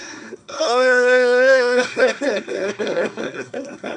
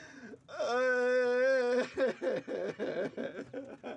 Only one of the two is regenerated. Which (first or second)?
first